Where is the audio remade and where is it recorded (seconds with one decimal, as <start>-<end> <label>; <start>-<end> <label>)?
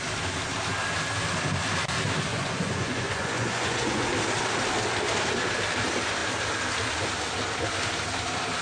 0.0-2.3 recorded; 2.3-4.1 remade; 4.1-8.6 recorded